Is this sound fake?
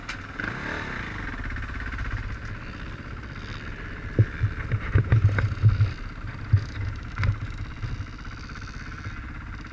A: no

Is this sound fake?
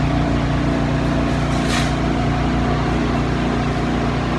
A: no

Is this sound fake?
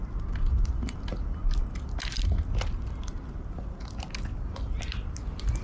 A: no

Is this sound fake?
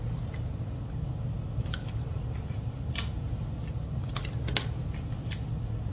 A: no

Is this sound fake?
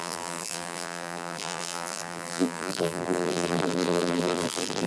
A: yes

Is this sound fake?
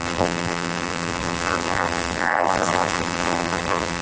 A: yes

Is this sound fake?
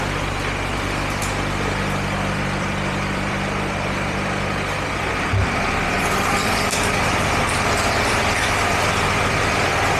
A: yes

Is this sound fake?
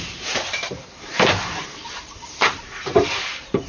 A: yes